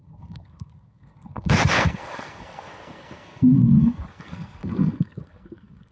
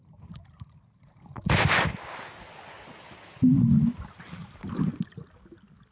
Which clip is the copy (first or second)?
first